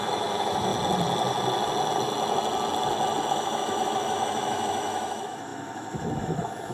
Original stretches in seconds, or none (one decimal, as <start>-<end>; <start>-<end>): 0.7-3.3